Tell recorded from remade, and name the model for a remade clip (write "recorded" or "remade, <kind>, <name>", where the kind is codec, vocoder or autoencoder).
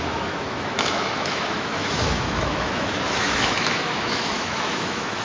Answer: remade, autoencoder, DAC-VAE